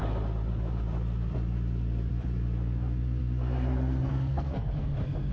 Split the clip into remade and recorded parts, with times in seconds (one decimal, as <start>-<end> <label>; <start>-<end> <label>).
0.0-4.1 recorded; 4.1-5.3 remade